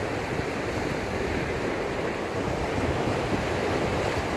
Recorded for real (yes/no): no